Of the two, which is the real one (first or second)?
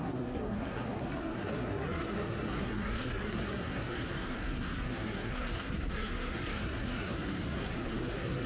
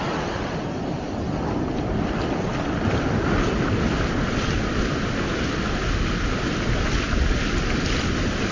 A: second